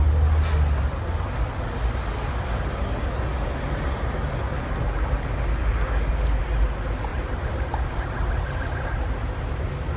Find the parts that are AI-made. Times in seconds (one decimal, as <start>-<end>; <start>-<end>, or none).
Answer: 5.6-6.4